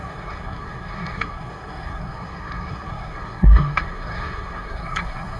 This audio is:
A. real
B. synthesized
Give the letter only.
B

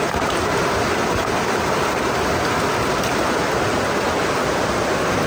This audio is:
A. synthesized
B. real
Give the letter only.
B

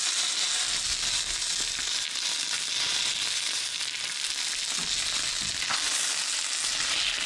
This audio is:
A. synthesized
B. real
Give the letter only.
B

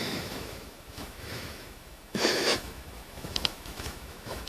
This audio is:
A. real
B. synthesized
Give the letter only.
B